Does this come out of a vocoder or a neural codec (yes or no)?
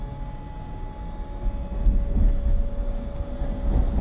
no